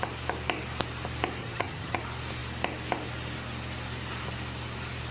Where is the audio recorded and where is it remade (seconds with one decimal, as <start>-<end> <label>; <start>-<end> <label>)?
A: 0.0-1.4 recorded; 1.4-2.0 remade; 2.0-5.1 recorded